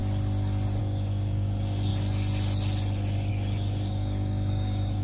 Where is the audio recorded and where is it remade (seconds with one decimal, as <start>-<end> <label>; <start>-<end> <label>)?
0.0-0.8 recorded; 0.8-1.9 remade; 1.9-3.3 recorded; 3.3-5.0 remade